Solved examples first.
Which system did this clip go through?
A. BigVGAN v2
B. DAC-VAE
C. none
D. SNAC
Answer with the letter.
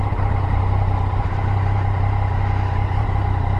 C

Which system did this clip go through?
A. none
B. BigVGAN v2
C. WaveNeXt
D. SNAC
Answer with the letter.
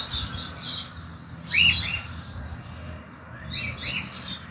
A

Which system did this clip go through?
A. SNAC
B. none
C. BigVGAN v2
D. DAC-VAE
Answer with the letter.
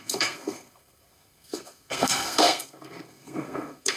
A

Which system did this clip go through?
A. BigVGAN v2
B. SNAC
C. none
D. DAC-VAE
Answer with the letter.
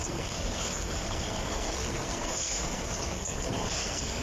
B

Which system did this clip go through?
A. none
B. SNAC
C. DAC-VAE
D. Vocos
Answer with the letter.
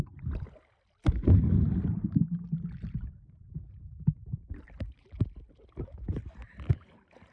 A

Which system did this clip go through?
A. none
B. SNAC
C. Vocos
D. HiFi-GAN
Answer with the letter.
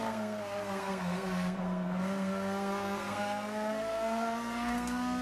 B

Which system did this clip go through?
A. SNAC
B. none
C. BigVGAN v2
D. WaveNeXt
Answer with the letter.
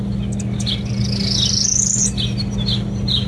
B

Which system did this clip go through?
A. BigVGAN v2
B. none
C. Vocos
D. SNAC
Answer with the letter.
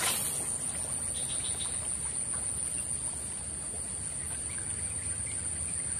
B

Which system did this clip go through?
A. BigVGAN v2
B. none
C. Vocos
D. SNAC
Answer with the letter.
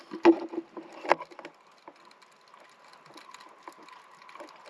B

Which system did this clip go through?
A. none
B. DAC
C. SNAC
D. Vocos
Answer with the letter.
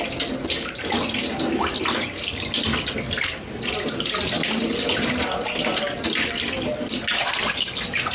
A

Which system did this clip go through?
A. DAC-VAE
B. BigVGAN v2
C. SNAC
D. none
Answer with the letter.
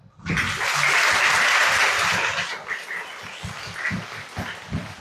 D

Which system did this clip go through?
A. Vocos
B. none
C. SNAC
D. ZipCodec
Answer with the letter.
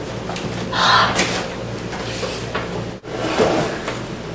B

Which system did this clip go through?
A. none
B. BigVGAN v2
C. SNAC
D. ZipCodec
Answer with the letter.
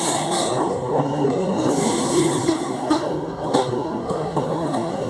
C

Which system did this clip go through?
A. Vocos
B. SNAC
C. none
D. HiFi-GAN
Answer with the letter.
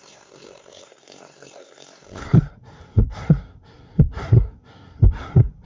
B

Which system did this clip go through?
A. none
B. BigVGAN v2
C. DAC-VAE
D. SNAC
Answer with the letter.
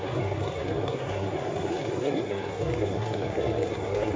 D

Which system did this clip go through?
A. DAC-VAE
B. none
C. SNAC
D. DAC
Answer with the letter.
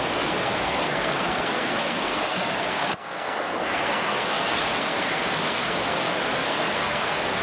C